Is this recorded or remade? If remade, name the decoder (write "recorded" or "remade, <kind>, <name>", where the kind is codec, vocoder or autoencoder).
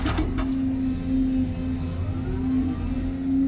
recorded